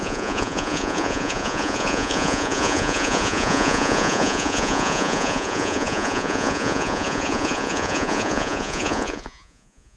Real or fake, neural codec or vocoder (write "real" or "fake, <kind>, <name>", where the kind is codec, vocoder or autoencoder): fake, vocoder, Vocos